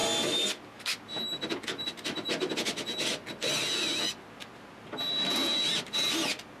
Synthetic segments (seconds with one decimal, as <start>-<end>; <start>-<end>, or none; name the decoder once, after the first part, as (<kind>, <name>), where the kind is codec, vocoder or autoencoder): none